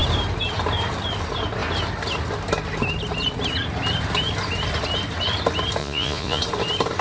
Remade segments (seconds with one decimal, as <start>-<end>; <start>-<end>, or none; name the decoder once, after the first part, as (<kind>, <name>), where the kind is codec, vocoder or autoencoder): 5.8-6.4 (vocoder, Vocos)